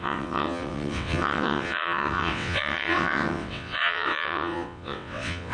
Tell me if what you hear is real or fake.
fake